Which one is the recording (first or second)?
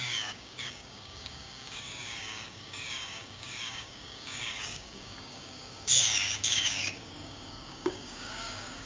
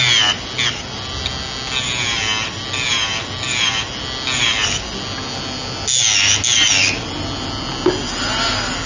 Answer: second